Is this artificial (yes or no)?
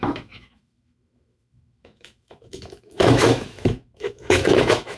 yes